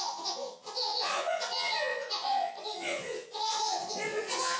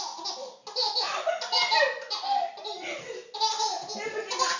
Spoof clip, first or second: first